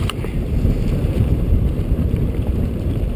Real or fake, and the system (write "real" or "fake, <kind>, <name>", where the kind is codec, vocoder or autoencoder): fake, vocoder, BigVGAN v2